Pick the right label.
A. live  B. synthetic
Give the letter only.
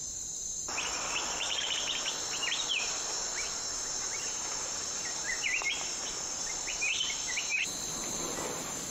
B